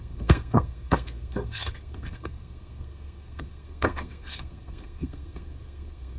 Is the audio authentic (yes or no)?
no